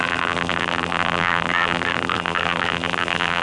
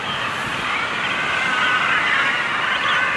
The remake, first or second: first